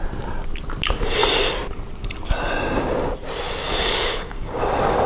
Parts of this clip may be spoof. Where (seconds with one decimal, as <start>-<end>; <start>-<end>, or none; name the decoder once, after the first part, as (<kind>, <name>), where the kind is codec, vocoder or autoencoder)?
3.6-4.6 (codec, DAC)